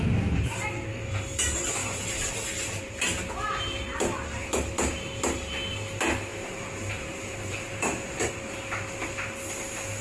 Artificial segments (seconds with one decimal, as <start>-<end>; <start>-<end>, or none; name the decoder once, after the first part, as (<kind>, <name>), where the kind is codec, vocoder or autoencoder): 1.8-3.3 (vocoder, BigVGAN v2); 4.3-4.9; 6.3-8.3